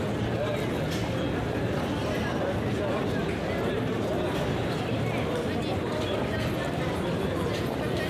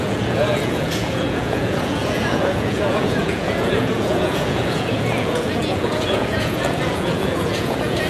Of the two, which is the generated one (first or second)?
second